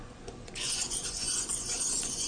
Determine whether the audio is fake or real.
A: fake